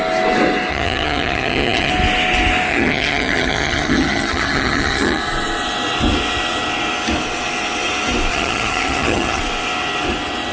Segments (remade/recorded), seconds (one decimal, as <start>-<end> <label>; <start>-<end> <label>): 0.0-0.7 recorded; 0.7-1.9 remade; 1.9-2.7 recorded; 2.7-5.2 remade; 5.2-8.3 recorded; 8.3-9.4 remade; 9.4-10.5 recorded